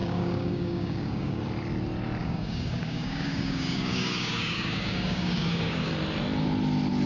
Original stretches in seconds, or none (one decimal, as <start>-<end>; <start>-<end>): 1.4-2.2; 5.9-7.1